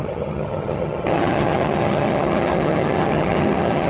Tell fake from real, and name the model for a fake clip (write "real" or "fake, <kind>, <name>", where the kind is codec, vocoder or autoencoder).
fake, vocoder, HiFi-GAN